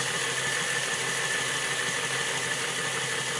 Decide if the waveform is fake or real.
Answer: real